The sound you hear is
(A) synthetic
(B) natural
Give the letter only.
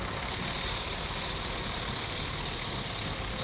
B